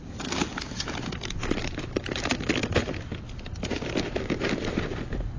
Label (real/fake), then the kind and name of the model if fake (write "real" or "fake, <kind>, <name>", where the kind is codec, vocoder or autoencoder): real